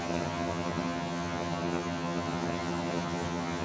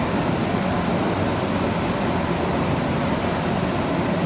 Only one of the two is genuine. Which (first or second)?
second